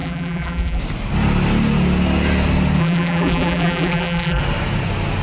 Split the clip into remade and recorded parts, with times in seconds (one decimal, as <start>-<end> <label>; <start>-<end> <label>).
0.0-0.8 remade; 0.8-2.8 recorded; 2.8-4.4 remade; 4.4-5.2 recorded